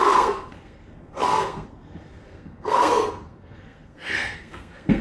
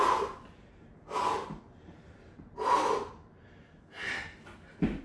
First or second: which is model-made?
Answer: first